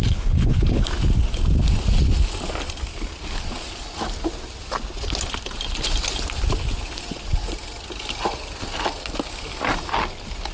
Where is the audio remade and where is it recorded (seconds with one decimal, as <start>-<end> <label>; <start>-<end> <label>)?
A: 0.0-0.9 remade; 0.9-10.5 recorded